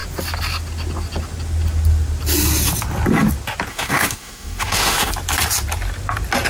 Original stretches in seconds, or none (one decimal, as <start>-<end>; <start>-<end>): 0.0-3.7; 5.1-6.5